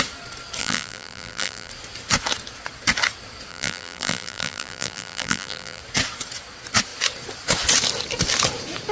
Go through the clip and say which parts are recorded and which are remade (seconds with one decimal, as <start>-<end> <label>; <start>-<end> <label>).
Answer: 0.0-0.6 recorded; 0.6-1.7 remade; 1.7-3.5 recorded; 3.5-5.8 remade; 5.8-8.9 recorded